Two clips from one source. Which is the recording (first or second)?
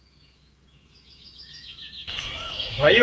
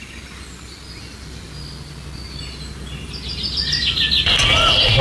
second